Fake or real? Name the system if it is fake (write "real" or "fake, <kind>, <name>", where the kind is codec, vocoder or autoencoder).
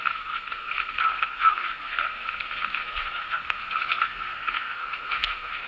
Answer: fake, codec, SNAC